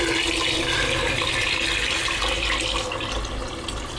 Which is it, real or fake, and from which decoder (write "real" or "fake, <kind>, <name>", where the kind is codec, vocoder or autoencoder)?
real